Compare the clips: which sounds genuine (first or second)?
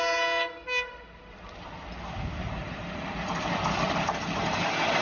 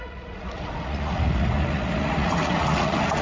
first